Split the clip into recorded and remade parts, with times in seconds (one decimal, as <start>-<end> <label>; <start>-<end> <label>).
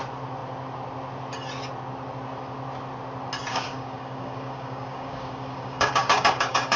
0.0-3.5 recorded; 3.5-6.8 remade